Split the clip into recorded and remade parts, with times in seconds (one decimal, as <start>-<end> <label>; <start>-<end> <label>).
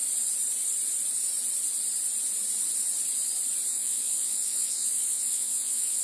0.0-3.7 recorded; 3.7-6.0 remade